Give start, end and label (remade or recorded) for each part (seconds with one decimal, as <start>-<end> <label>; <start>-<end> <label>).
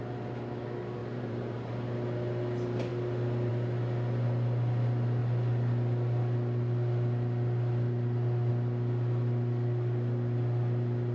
0.0-1.0 recorded; 1.0-1.7 remade; 1.7-11.1 recorded